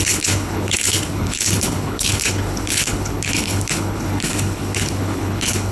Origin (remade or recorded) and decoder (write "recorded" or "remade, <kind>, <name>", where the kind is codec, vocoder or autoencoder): remade, codec, HILCodec